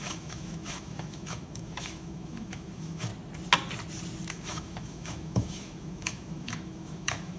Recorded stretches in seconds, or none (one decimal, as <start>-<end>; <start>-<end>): 3.1-4.3